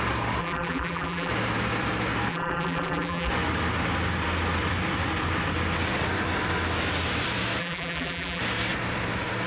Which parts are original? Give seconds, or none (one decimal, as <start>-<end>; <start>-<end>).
0.0-0.4; 1.3-2.3; 3.3-7.6; 8.4-9.5